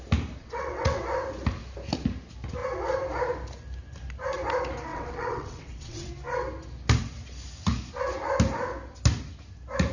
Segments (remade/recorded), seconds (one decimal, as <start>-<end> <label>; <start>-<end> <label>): 0.0-0.4 recorded; 0.4-1.0 remade; 1.0-4.9 recorded; 4.9-6.1 remade; 6.1-9.9 recorded